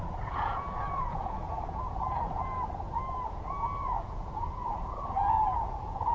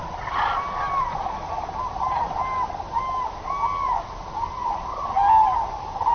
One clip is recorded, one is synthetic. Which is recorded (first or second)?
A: second